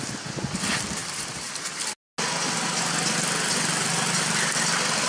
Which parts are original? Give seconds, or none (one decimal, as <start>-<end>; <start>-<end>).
0.0-5.1